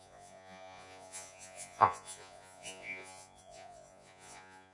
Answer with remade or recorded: remade